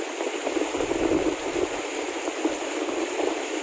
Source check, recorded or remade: recorded